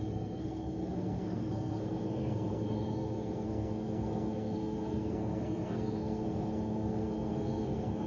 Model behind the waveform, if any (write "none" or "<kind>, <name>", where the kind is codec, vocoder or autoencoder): codec, SNAC